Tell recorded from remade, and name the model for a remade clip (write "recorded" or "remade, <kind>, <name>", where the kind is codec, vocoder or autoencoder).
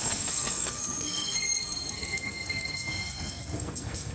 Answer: remade, codec, SNAC